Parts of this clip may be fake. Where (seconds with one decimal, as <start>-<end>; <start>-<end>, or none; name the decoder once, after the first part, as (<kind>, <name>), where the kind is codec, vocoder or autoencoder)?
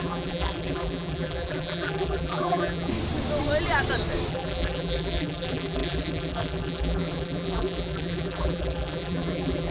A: 0.0-2.9 (vocoder, BigVGAN v2); 4.3-9.7